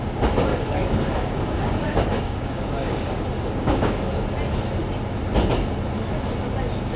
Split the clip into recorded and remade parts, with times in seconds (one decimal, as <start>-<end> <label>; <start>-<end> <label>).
0.0-0.5 recorded; 0.5-4.1 remade; 4.1-7.0 recorded